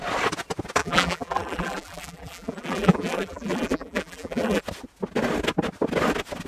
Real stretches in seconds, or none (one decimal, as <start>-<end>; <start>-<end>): 0.0-0.8; 4.6-6.5